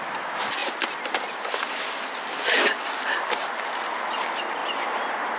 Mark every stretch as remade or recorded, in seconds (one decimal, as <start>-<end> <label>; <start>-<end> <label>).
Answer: 0.0-5.4 recorded